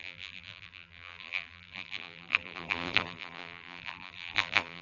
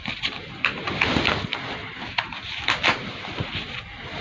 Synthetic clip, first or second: first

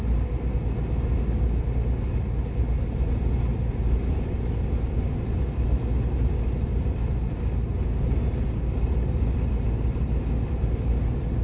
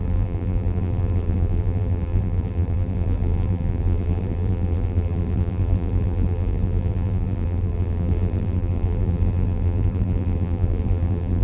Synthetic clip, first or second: second